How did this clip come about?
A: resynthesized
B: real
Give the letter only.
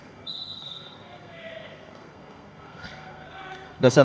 A